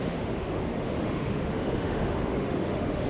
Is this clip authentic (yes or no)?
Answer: no